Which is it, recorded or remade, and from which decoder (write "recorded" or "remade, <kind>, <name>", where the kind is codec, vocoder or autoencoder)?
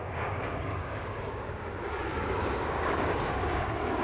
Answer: remade, codec, DAC